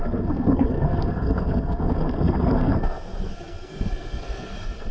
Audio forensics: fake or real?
fake